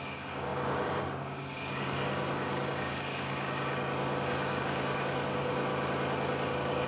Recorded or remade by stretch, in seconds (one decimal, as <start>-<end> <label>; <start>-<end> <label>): 0.0-5.7 remade; 5.7-6.5 recorded; 6.5-6.9 remade

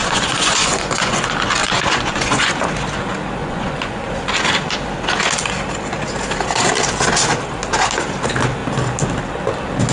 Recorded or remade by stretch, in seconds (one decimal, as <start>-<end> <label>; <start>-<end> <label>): 0.0-1.2 remade; 1.2-1.6 recorded; 1.6-2.5 remade; 2.5-3.4 recorded; 3.4-4.0 remade; 4.0-9.9 recorded

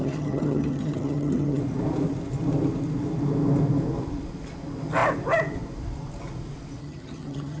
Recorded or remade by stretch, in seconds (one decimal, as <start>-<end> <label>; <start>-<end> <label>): 0.0-1.6 remade; 1.6-6.8 recorded; 6.8-7.6 remade

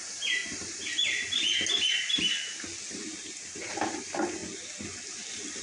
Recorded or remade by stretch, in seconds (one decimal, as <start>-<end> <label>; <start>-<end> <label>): 0.0-0.4 remade; 0.4-3.8 recorded; 3.8-4.4 remade; 4.4-5.6 recorded